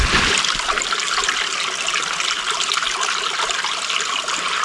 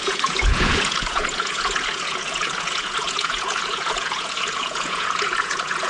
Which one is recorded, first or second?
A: first